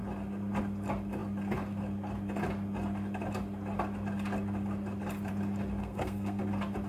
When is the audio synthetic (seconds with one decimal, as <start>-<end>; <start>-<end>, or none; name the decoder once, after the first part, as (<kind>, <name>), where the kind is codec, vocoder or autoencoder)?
5.8-6.4 (codec, SNAC)